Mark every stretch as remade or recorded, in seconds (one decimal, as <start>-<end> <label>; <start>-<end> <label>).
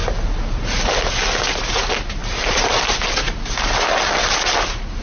0.0-2.2 recorded; 2.2-3.9 remade; 3.9-5.0 recorded